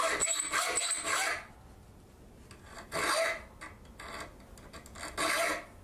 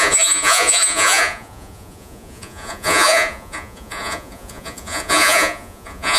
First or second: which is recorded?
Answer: first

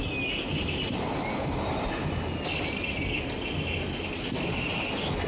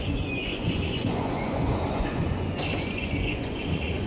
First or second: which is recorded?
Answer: first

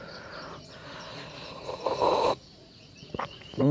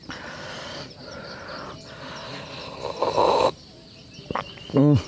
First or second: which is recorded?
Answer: second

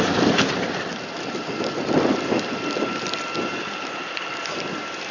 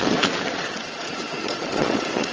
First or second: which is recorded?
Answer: first